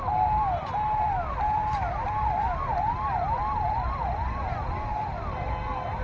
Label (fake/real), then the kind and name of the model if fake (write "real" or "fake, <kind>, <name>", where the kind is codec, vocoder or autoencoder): real